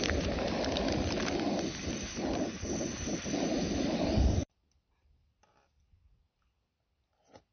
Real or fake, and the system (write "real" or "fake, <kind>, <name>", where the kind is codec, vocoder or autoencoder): real